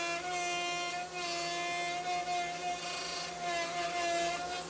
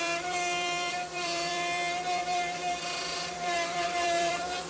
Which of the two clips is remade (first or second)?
second